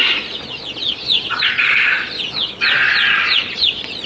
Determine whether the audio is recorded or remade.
remade